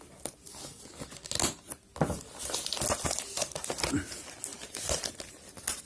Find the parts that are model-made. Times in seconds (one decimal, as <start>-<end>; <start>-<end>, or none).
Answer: none